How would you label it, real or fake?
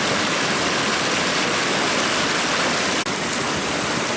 real